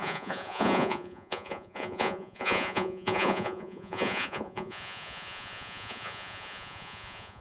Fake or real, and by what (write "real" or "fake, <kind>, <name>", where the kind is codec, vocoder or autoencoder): fake, vocoder, Vocos